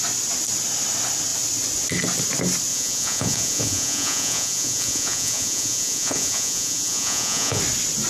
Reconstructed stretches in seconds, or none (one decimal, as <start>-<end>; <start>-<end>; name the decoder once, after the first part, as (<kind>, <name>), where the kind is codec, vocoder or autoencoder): 2.7-7.6 (vocoder, Vocos)